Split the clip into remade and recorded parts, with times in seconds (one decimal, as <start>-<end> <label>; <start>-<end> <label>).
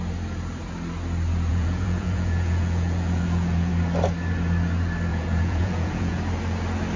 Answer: 0.0-1.5 recorded; 1.5-3.7 remade; 3.7-5.1 recorded; 5.1-6.2 remade; 6.2-7.0 recorded